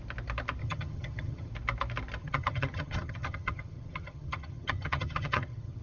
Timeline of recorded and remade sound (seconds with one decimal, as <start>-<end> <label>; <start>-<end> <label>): 0.0-0.6 recorded; 0.6-1.5 remade; 1.5-2.2 recorded; 2.2-5.8 remade